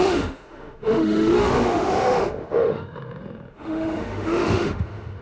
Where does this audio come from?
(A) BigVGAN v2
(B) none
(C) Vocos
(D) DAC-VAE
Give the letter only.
D